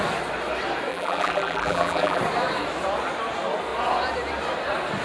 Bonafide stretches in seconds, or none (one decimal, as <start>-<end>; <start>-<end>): 0.0-0.9; 2.2-5.0